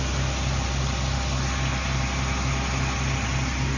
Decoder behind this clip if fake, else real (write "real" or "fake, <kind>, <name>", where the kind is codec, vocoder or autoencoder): real